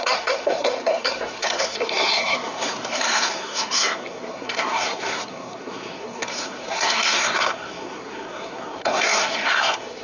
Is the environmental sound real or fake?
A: fake